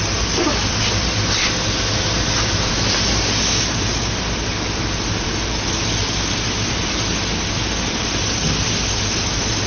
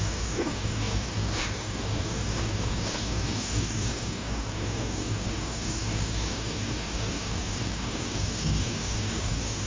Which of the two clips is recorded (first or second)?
first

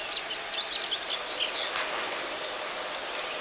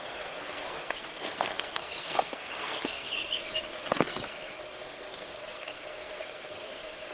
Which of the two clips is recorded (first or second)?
first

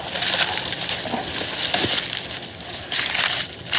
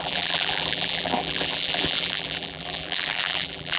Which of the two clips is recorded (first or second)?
first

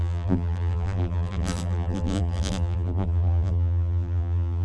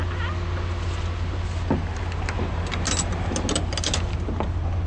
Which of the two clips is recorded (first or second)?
second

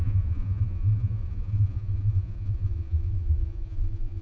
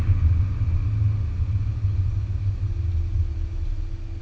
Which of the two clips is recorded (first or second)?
second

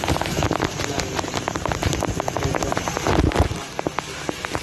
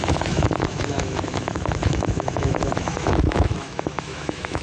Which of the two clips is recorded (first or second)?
first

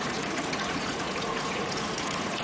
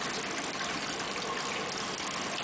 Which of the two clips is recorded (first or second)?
second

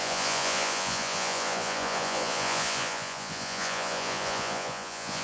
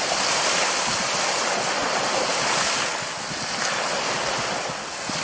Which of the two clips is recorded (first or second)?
second